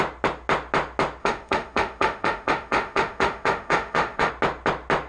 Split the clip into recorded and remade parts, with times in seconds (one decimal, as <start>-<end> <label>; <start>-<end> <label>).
0.0-1.2 recorded; 1.2-4.3 remade; 4.3-5.1 recorded

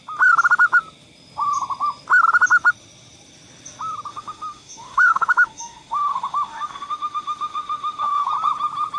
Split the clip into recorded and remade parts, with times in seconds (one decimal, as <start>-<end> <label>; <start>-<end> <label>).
0.0-4.1 recorded; 4.1-8.3 remade; 8.3-9.0 recorded

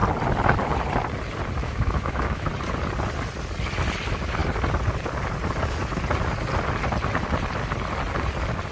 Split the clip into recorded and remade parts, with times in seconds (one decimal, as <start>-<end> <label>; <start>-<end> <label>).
0.0-1.6 recorded; 1.6-2.5 remade; 2.5-8.7 recorded

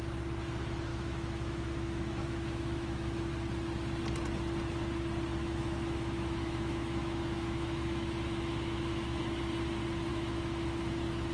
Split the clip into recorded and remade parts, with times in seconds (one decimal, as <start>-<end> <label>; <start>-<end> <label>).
0.0-0.9 recorded; 0.9-3.3 remade; 3.3-5.4 recorded; 5.4-9.4 remade; 9.4-10.1 recorded; 10.1-10.9 remade; 10.9-11.3 recorded